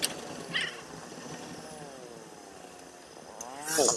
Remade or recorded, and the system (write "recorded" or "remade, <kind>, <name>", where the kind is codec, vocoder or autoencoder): recorded